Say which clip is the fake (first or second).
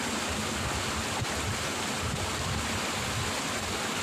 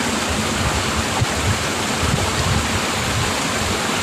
second